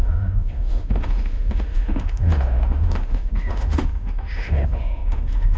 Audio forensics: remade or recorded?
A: remade